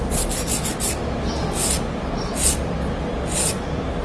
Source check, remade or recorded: recorded